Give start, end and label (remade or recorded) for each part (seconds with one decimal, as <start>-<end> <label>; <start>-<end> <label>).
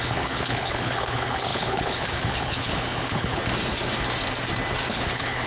0.0-3.4 remade; 3.4-4.9 recorded; 4.9-5.5 remade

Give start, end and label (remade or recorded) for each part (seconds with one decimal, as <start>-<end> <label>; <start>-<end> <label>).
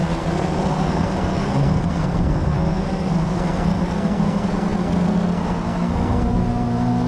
0.0-7.1 remade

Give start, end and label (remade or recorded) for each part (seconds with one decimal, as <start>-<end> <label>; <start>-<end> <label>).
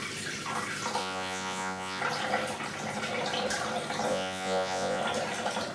0.0-1.0 recorded; 1.0-2.0 remade; 2.0-4.1 recorded; 4.1-5.0 remade; 5.0-5.7 recorded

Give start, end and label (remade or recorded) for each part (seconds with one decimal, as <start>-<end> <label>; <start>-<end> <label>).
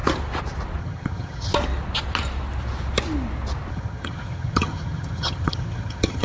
0.0-0.8 recorded; 0.8-1.5 remade; 1.5-3.7 recorded; 3.7-6.2 remade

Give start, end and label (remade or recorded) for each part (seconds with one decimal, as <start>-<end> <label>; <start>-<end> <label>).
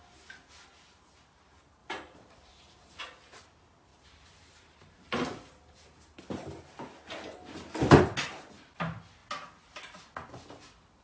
0.0-1.8 recorded; 1.8-3.0 remade; 3.0-3.9 recorded; 3.9-6.2 remade; 6.2-11.0 recorded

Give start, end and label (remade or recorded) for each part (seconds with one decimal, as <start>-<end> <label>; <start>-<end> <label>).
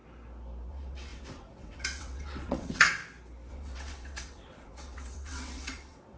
0.0-0.7 recorded; 0.7-3.0 remade; 3.0-3.5 recorded; 3.5-6.2 remade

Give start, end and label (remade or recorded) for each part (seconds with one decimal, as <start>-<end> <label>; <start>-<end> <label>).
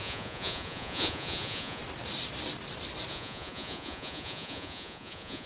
0.0-1.8 remade; 1.8-3.1 recorded; 3.1-5.5 remade